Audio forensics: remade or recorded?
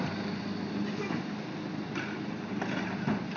recorded